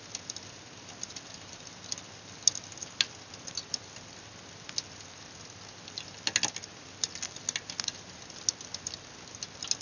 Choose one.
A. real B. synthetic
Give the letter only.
A